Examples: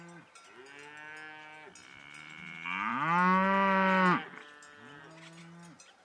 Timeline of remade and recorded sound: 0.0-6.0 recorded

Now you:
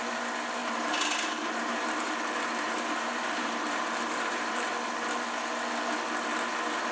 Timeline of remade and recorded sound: 0.0-0.6 recorded; 0.6-4.7 remade; 4.7-6.9 recorded

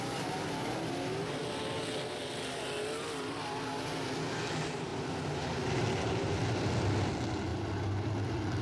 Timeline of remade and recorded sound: 0.0-7.5 recorded; 7.5-8.1 remade; 8.1-8.6 recorded

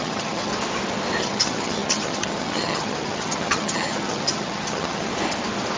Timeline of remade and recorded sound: 0.0-0.5 remade; 0.5-1.2 recorded; 1.2-5.1 remade; 5.1-5.8 recorded

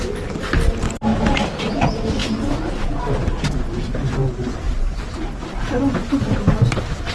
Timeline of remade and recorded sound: 0.0-7.1 recorded

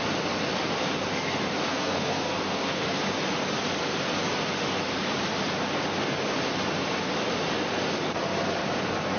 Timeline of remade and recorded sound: 0.0-1.7 recorded; 1.7-3.0 remade; 3.0-9.2 recorded

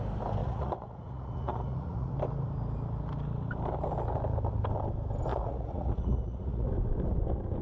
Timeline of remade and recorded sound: 0.0-0.4 recorded; 0.4-2.1 remade; 2.1-5.3 recorded; 5.3-6.7 remade; 6.7-7.6 recorded